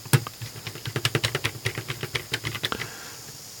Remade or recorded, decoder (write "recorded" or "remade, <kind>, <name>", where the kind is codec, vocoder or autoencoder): recorded